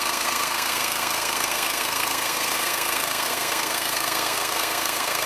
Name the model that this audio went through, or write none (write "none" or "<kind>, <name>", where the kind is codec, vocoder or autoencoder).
codec, SNAC